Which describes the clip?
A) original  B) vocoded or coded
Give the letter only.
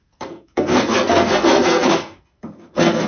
B